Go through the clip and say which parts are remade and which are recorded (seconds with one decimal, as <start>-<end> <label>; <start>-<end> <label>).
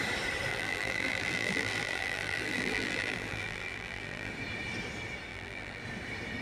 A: 0.0-0.5 recorded; 0.5-4.3 remade; 4.3-5.3 recorded; 5.3-5.8 remade; 5.8-6.4 recorded